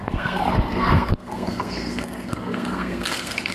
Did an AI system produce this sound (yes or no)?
yes